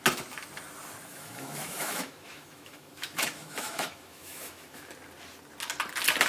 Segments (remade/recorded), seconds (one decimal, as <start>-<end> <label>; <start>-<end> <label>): 0.0-1.1 recorded; 1.1-4.9 remade; 4.9-6.3 recorded